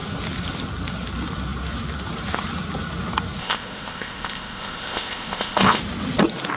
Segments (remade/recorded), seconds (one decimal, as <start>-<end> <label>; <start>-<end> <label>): 0.0-3.4 recorded; 3.4-5.8 remade; 5.8-6.6 recorded